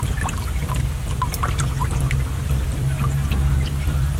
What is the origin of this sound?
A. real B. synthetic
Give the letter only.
B